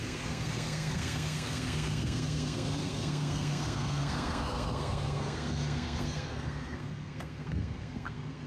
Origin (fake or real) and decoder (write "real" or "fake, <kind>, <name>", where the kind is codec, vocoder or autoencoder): fake, codec, SNAC